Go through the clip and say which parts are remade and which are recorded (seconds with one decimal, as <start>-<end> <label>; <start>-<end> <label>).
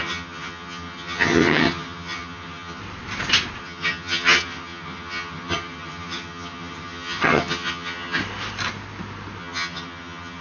0.0-2.8 remade; 2.8-3.6 recorded; 3.6-8.2 remade; 8.2-9.4 recorded; 9.4-10.4 remade